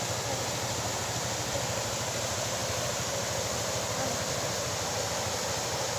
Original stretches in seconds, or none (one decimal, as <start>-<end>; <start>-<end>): 0.0-6.0